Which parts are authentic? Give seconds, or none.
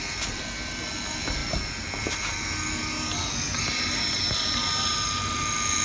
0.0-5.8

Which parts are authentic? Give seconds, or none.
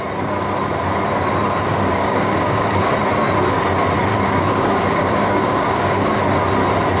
0.0-1.7; 2.9-4.1; 6.2-7.0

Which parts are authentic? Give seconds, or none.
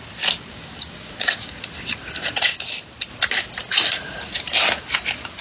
0.0-0.5; 1.6-5.4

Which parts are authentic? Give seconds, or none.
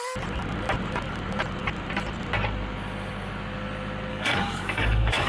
0.0-4.1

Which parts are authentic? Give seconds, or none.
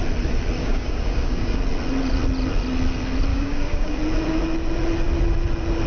0.0-0.6; 1.6-3.3; 4.0-5.9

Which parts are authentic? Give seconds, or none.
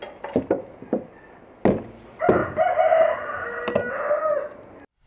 0.0-5.1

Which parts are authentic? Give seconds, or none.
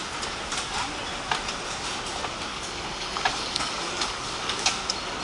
0.0-2.5; 4.7-5.2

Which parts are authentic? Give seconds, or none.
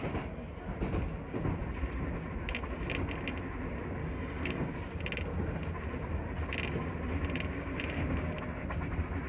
0.0-4.0; 4.7-9.3